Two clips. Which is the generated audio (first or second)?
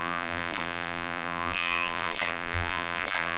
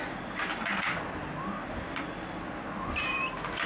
first